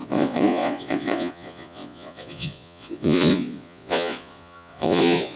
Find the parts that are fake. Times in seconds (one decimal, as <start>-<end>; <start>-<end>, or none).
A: 0.0-5.4